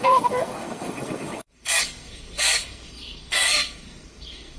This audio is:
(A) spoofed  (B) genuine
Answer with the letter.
A